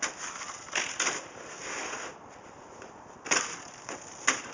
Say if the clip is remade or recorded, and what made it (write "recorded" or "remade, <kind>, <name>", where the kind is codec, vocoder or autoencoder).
recorded